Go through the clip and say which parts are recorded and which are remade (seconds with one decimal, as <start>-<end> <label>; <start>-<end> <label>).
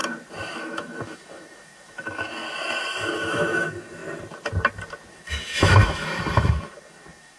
0.0-0.6 recorded; 0.6-2.4 remade; 2.4-3.1 recorded; 3.1-4.0 remade; 4.0-5.1 recorded; 5.1-7.4 remade